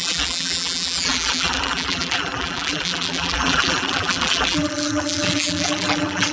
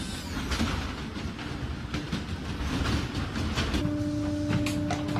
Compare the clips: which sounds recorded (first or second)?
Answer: second